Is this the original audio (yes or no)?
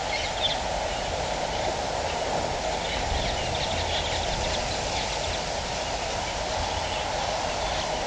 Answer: yes